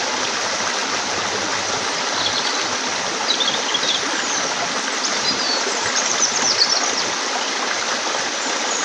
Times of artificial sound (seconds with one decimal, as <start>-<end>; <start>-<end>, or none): 5.1-6.3